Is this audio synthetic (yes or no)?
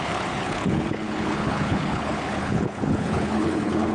yes